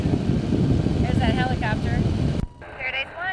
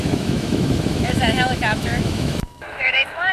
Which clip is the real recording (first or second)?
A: first